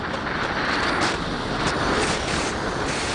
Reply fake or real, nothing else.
real